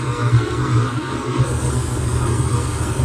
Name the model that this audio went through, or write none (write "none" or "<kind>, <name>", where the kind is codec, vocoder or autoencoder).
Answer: codec, SNAC